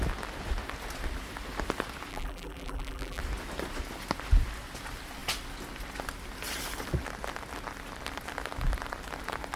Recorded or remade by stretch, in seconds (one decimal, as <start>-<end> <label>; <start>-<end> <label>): 0.0-2.1 recorded; 2.1-3.2 remade; 3.2-9.6 recorded